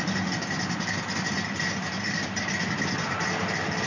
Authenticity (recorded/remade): recorded